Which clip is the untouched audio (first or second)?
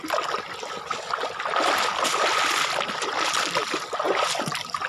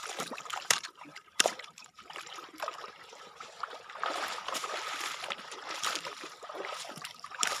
first